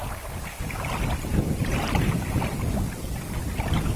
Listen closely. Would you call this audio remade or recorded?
recorded